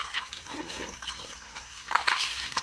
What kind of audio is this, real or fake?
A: fake